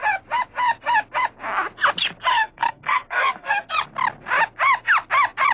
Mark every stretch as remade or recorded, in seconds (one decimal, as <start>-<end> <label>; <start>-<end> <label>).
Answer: 0.0-2.3 recorded; 2.3-3.7 remade; 3.7-5.5 recorded

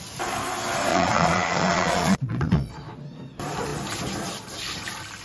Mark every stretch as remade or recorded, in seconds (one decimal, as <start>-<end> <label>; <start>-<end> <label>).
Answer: 0.0-0.9 recorded; 0.9-2.7 remade; 2.7-5.2 recorded

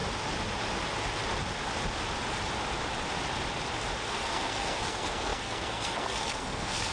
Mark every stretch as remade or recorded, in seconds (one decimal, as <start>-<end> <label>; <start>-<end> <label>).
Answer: 0.0-4.1 recorded; 4.1-6.9 remade

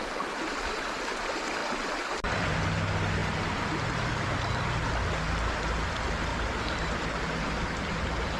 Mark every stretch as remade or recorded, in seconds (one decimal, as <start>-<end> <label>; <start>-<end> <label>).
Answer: 0.0-8.4 recorded

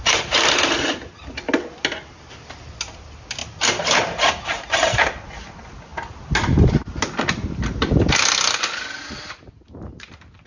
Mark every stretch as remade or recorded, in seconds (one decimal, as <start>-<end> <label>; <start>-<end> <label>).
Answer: 0.0-10.5 recorded

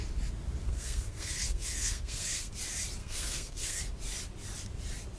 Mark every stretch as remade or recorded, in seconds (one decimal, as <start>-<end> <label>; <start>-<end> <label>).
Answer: 0.0-0.6 recorded; 0.6-2.5 remade; 2.5-3.0 recorded; 3.0-3.8 remade; 3.8-5.2 recorded